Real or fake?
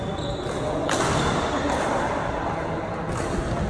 real